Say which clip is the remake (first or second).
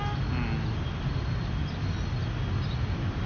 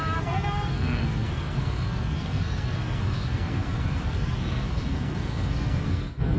second